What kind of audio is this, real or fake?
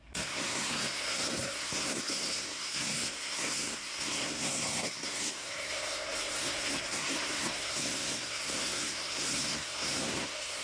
fake